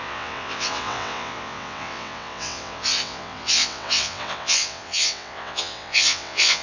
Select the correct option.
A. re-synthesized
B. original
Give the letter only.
A